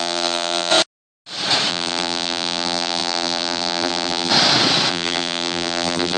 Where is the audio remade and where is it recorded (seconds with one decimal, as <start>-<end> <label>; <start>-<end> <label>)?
0.0-0.7 remade; 0.7-1.7 recorded; 1.7-4.3 remade; 4.3-4.9 recorded; 4.9-6.2 remade